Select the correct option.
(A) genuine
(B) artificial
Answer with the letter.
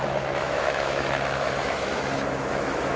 B